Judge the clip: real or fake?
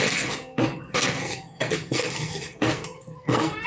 fake